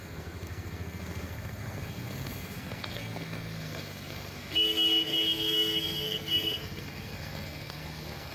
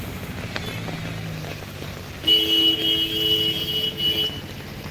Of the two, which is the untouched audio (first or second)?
second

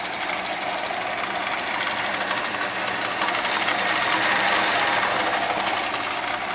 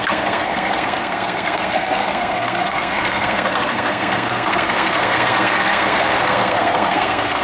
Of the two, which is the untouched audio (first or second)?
first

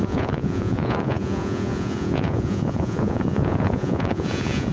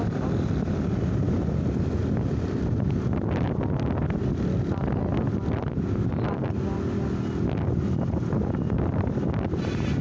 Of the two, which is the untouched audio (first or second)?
second